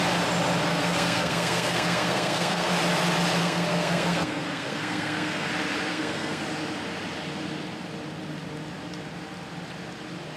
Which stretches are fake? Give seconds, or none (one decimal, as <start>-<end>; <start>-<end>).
0.7-2.7; 3.4-5.5; 5.9-6.4